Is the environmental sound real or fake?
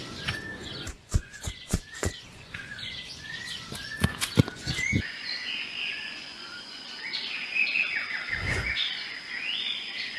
fake